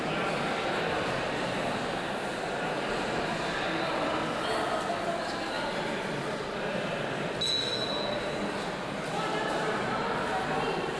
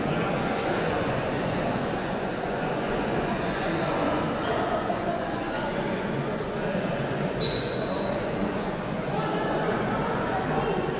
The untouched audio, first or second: first